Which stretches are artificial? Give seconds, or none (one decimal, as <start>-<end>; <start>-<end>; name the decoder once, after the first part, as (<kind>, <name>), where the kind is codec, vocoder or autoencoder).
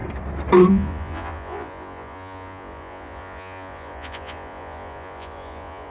0.7-5.9 (vocoder, Vocos)